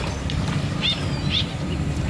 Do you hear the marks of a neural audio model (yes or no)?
yes